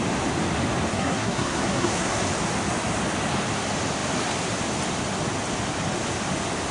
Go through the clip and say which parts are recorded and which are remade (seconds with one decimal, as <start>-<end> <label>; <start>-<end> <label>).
0.0-0.9 recorded; 0.9-2.2 remade; 2.2-6.7 recorded

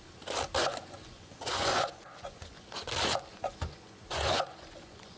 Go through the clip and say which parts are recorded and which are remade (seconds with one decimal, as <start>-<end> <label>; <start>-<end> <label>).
0.0-0.6 recorded; 0.6-2.9 remade; 2.9-3.3 recorded; 3.3-5.2 remade